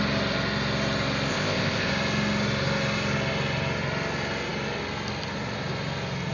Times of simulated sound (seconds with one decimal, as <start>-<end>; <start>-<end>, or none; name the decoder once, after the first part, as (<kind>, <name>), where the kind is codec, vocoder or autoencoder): 1.3-1.9 (codec, ZipCodec)